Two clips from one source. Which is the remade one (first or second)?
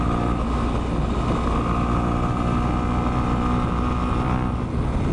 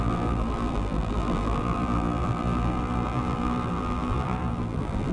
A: second